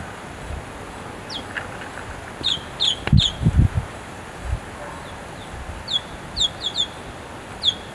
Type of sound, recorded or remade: recorded